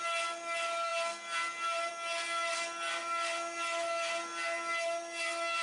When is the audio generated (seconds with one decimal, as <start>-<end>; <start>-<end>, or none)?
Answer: none